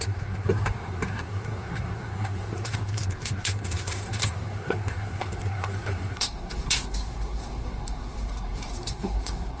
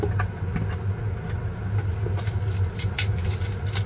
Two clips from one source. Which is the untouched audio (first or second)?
second